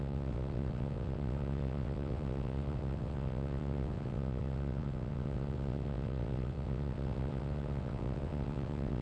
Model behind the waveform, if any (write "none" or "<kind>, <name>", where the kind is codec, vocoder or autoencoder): vocoder, WaveNeXt